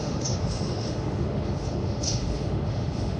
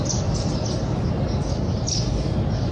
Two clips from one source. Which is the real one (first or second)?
second